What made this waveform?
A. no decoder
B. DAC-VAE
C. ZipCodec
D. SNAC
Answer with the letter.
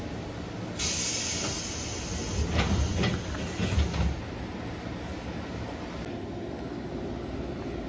A